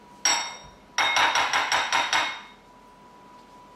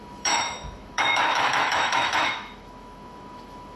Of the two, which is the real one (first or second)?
first